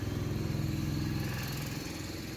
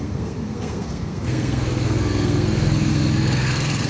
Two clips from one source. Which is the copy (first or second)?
second